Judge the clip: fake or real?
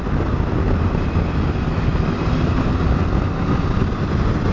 real